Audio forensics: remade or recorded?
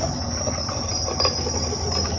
recorded